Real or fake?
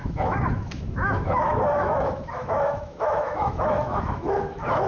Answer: fake